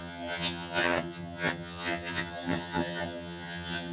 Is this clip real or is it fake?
fake